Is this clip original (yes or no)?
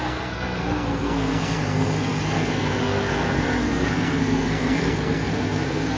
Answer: no